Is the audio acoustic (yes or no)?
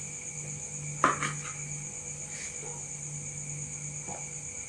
yes